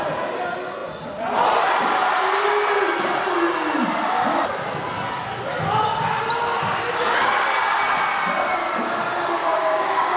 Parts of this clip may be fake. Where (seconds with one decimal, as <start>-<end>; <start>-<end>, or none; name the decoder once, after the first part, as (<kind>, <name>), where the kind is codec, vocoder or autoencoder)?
9.4-10.2 (codec, DAC)